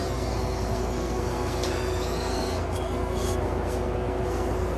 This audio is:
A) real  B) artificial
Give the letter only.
B